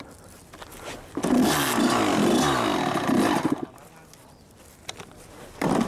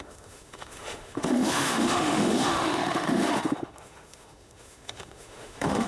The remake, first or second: second